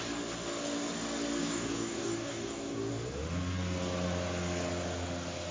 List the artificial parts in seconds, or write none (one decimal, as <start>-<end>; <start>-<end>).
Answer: 1.4-2.9